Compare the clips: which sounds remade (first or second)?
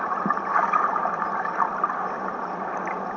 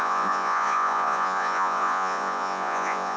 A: second